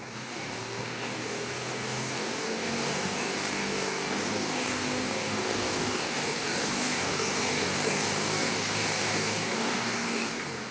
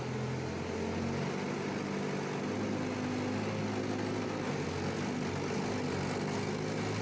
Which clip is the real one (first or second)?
second